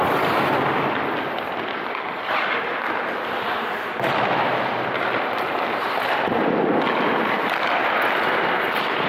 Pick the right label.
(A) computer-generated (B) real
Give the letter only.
B